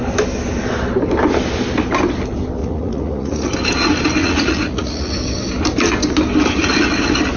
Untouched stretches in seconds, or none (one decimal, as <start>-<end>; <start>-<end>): 0.0-2.6; 3.5-4.2; 5.1-7.4